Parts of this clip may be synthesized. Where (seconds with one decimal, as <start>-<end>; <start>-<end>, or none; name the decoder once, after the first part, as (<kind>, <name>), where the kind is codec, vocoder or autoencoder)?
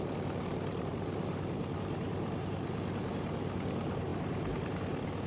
none